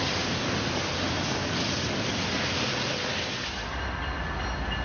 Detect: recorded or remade recorded